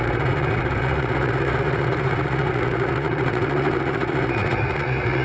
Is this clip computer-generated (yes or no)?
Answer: yes